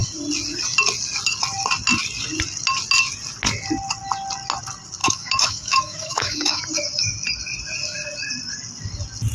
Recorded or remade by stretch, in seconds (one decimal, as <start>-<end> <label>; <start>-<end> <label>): 0.0-5.0 recorded; 5.0-6.6 remade; 6.6-9.3 recorded